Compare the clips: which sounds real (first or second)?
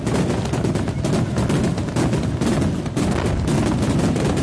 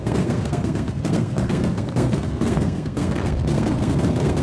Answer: first